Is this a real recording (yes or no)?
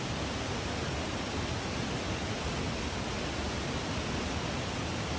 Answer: yes